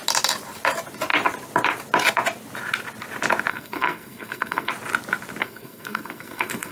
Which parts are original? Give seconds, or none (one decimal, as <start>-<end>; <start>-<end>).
0.0-3.5; 4.7-5.4